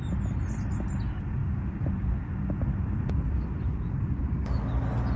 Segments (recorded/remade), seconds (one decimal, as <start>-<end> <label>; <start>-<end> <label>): 0.0-5.2 recorded